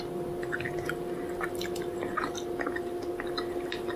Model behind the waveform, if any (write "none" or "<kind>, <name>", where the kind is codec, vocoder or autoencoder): none